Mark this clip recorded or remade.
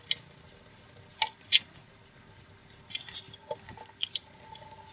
recorded